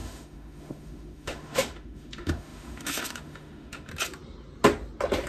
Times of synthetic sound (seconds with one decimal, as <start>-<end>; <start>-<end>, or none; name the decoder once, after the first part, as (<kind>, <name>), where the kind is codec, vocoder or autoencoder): 0.0-3.9 (autoencoder, DAC-VAE)